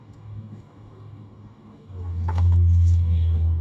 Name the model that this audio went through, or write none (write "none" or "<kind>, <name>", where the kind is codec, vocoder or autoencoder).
codec, DAC